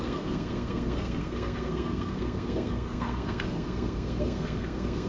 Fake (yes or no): yes